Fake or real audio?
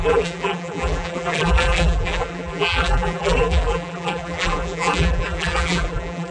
fake